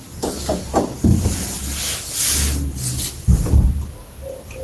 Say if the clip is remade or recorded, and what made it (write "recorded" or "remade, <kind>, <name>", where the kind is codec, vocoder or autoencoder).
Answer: recorded